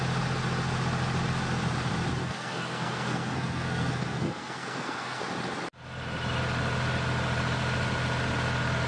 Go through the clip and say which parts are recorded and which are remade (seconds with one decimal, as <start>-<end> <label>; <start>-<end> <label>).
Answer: 0.0-2.2 recorded; 2.2-5.2 remade; 5.2-8.9 recorded